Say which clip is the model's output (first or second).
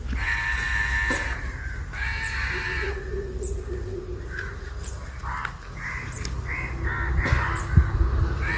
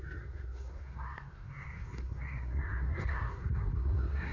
second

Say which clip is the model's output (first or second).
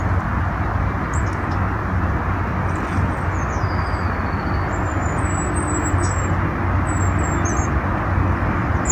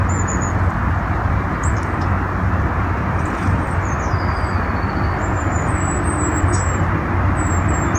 second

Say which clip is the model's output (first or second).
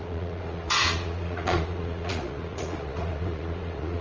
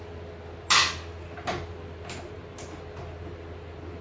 first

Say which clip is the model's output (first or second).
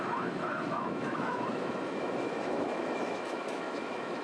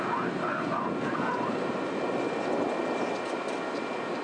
first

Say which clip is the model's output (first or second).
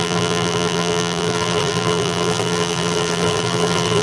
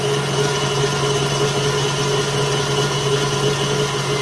first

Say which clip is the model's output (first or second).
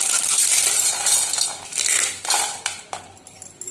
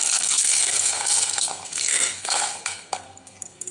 second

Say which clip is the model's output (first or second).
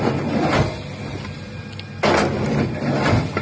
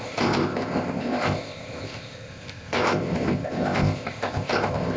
second